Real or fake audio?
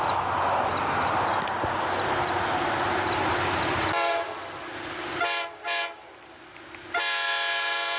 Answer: real